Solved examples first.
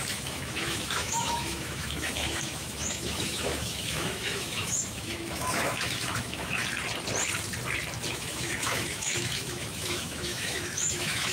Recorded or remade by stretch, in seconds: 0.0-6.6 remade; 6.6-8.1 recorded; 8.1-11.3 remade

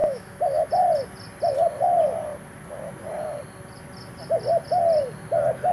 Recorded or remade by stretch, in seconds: 0.0-0.7 remade; 0.7-5.7 recorded

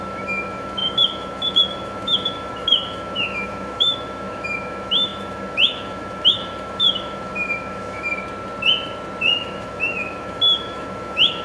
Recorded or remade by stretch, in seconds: 0.0-8.1 remade; 8.1-9.2 recorded; 9.2-11.4 remade